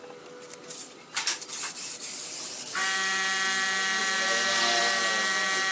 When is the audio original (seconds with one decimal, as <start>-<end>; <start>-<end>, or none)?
2.8-4.0; 5.0-5.7